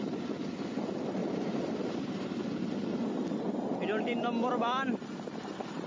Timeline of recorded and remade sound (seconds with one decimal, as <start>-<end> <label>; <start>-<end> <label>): 0.0-1.2 recorded; 1.2-2.4 remade; 2.4-5.9 recorded